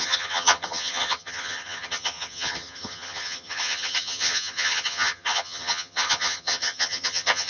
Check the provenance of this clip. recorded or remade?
remade